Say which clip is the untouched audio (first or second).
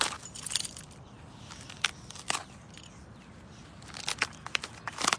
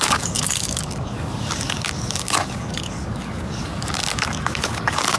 first